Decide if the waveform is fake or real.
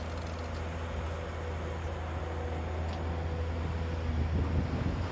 real